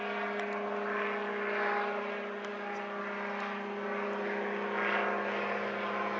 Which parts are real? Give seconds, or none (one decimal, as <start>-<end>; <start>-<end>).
0.0-6.2